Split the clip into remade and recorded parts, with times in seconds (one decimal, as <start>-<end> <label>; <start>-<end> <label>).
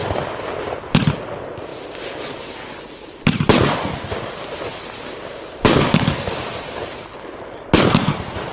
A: 0.0-8.5 recorded